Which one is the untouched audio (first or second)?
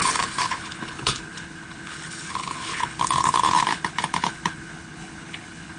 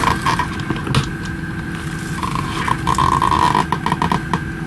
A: second